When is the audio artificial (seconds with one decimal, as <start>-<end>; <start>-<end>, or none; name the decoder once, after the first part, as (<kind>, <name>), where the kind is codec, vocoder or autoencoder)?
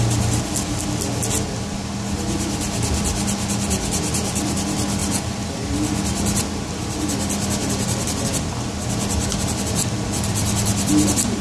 none